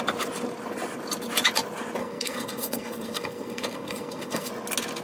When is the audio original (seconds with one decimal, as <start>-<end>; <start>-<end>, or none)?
0.0-2.0; 4.5-5.0